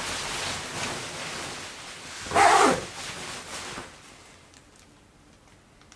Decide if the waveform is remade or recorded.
recorded